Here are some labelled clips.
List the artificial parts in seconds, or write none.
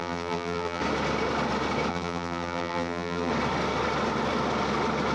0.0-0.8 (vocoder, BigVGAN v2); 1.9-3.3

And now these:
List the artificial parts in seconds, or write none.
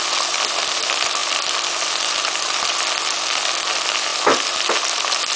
none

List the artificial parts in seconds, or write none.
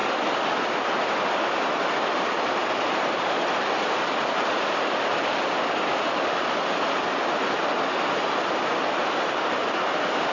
0.0-1.3 (vocoder, BigVGAN v2); 2.6-6.9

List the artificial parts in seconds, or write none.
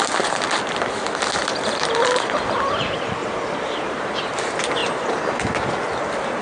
3.2-4.2 (vocoder, BigVGAN v2)